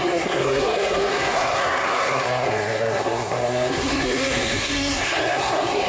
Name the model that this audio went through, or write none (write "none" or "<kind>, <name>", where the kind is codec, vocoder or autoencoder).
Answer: codec, SNAC